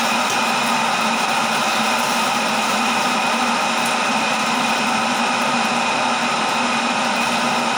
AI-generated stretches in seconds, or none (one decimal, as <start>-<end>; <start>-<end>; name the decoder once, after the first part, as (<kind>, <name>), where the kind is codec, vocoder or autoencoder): 1.7-5.3 (vocoder, BigVGAN v2)